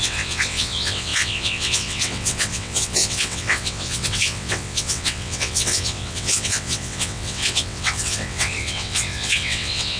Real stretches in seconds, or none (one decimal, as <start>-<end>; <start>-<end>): none